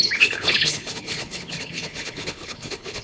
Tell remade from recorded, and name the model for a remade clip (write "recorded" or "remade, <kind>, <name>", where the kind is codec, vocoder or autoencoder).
remade, codec, HILCodec